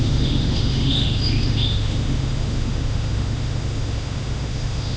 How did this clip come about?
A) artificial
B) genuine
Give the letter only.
A